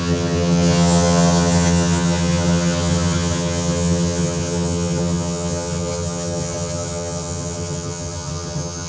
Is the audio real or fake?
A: fake